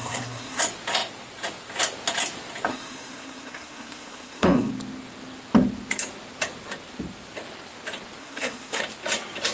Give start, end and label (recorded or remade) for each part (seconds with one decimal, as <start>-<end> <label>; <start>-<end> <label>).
0.0-0.6 remade; 0.6-2.7 recorded; 2.7-4.7 remade; 4.7-8.2 recorded; 8.2-8.8 remade; 8.8-9.5 recorded